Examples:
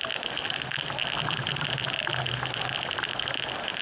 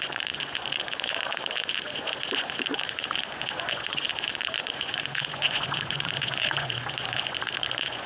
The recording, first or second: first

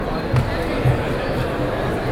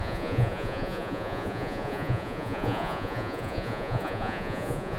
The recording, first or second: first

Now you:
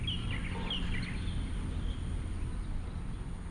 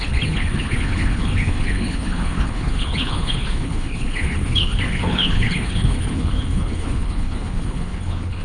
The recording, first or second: first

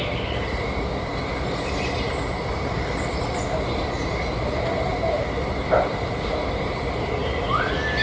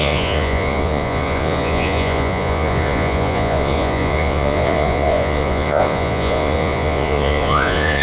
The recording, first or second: first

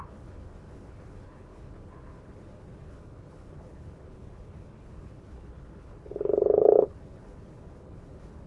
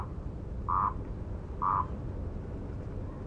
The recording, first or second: second